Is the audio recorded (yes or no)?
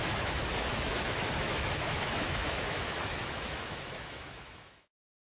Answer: no